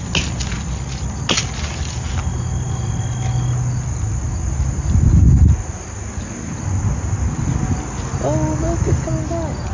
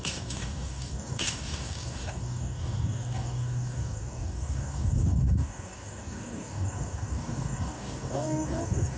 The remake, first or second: second